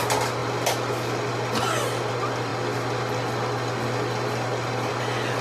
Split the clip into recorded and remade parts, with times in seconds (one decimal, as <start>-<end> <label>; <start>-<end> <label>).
0.0-5.4 recorded